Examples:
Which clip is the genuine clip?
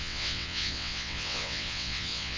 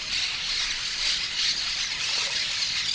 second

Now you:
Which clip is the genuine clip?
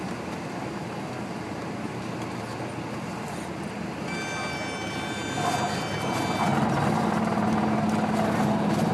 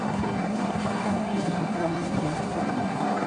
first